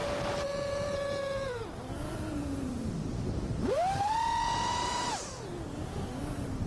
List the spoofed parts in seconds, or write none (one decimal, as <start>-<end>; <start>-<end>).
none